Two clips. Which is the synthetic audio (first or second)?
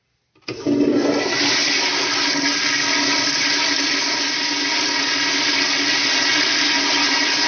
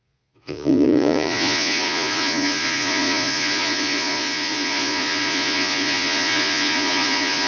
second